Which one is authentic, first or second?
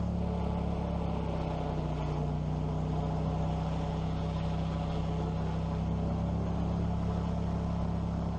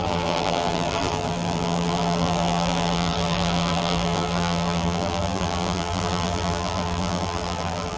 first